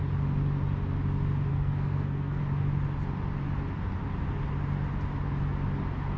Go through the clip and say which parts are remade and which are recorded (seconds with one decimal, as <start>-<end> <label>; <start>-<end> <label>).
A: 0.0-1.5 recorded; 1.5-2.4 remade; 2.4-6.2 recorded